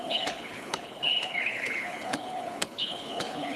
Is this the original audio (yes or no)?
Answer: no